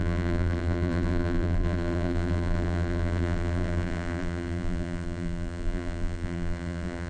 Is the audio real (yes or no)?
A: no